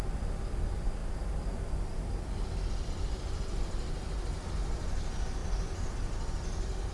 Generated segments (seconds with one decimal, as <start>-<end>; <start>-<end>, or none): none